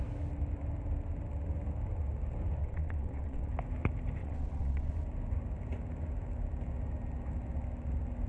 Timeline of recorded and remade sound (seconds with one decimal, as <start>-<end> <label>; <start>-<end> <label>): 0.0-2.6 recorded; 2.6-3.5 remade; 3.5-4.2 recorded; 4.2-4.9 remade; 4.9-8.3 recorded